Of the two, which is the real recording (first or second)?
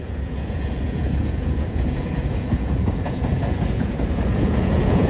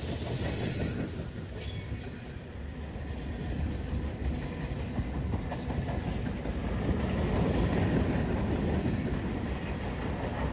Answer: second